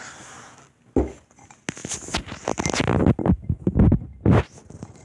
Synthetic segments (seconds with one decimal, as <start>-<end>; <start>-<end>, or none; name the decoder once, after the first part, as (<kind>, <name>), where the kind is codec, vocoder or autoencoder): none